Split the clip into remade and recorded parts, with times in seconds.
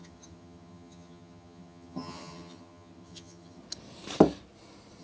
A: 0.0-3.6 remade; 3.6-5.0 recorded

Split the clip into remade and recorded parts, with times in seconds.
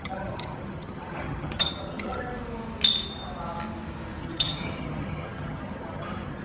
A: 0.0-2.3 remade; 2.3-4.2 recorded; 4.2-6.4 remade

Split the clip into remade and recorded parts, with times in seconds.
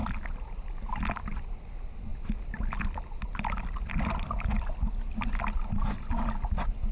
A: 0.0-6.9 recorded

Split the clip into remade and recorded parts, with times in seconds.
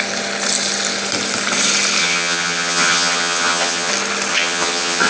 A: 0.0-2.0 recorded; 2.0-3.9 remade; 3.9-4.3 recorded; 4.3-5.1 remade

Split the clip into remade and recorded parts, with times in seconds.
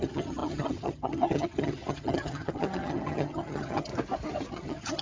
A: 0.0-3.9 remade; 3.9-4.5 recorded; 4.5-5.0 remade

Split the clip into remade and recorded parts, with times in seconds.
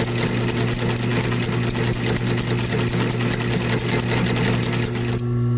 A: 0.0-5.6 recorded